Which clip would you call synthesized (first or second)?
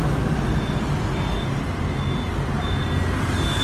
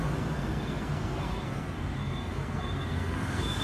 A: second